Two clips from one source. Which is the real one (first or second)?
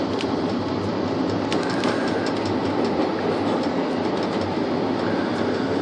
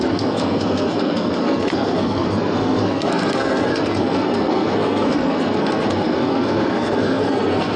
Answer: first